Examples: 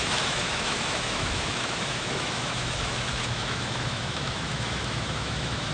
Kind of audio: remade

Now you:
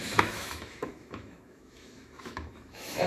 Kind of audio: remade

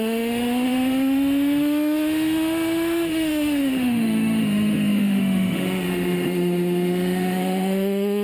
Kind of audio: remade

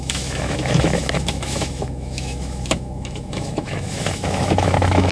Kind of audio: remade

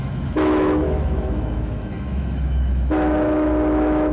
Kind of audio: remade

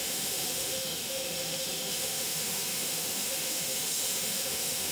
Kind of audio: remade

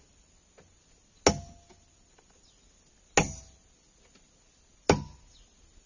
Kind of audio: recorded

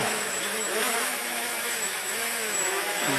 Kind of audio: remade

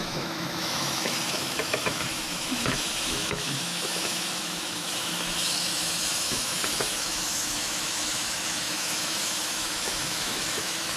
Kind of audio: remade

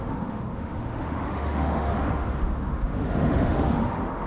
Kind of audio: remade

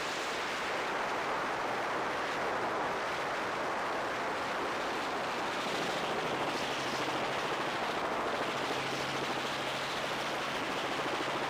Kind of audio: recorded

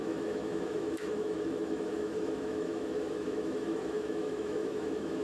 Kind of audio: remade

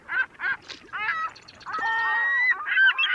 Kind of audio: recorded